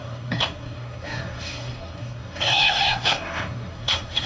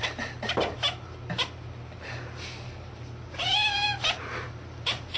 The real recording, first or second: second